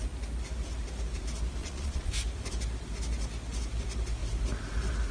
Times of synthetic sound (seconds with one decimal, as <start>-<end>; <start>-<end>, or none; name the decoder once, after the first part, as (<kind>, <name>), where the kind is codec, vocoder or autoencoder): 1.6-2.1 (vocoder, Vocos)